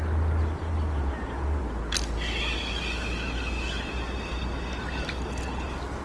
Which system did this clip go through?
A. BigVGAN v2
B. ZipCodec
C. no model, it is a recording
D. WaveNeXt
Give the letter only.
C